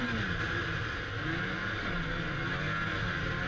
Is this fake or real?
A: real